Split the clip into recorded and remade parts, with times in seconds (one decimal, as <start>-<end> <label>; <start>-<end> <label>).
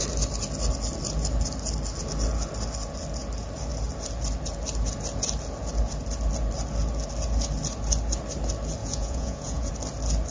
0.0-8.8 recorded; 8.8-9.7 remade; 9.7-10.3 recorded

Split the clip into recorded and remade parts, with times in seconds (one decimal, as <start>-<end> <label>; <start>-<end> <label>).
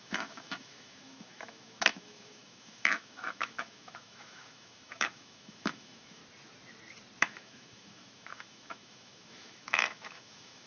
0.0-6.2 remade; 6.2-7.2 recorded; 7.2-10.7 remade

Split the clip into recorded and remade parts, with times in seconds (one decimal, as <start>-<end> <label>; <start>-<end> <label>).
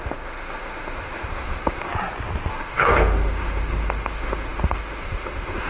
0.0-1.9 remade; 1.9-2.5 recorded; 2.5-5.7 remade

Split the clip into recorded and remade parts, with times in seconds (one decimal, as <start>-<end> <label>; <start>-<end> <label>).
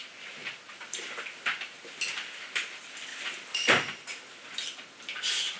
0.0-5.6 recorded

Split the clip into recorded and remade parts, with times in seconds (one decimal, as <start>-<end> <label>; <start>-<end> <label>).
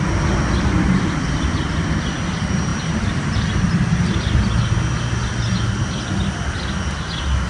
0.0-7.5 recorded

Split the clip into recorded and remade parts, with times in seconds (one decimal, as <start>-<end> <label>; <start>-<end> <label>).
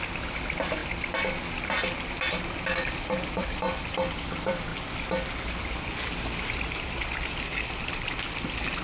0.0-4.7 remade; 4.7-5.4 recorded; 5.4-8.8 remade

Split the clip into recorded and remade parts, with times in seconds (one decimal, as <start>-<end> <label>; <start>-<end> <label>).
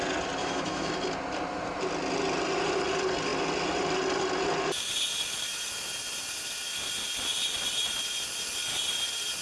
0.0-0.4 recorded; 0.4-0.9 remade; 0.9-9.4 recorded